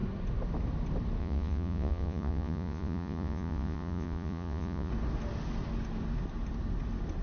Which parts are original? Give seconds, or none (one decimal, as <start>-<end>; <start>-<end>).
0.0-1.2; 4.9-7.2